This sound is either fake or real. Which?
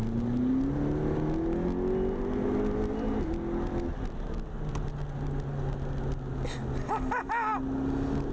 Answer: real